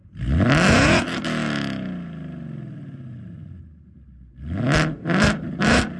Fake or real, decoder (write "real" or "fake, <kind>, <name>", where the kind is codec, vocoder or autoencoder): real